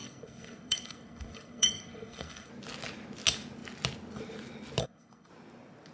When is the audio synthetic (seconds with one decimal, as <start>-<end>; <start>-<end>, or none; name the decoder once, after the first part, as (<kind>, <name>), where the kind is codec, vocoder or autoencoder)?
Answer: 0.0-2.5 (codec, SNAC); 4.8-5.3